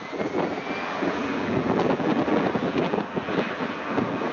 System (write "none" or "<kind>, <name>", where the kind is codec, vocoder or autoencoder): vocoder, BigVGAN v2